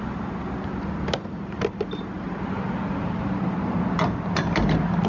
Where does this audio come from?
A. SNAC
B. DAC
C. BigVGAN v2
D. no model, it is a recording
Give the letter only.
D